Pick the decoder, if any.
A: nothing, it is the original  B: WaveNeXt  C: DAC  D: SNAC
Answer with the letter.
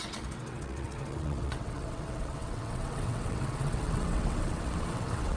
B